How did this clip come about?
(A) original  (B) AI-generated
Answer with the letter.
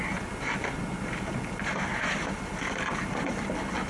A